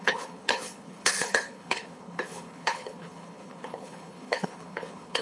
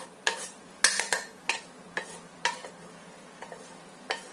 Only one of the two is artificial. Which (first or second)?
first